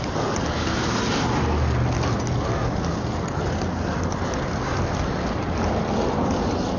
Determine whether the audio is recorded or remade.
recorded